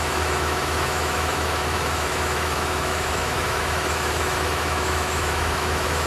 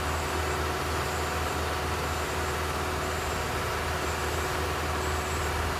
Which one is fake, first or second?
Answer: first